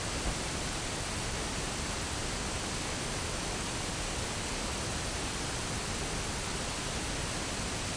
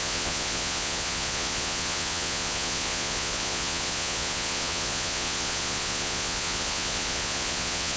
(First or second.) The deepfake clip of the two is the second